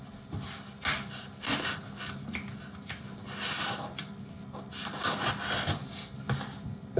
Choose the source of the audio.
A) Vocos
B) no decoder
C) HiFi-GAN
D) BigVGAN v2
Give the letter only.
B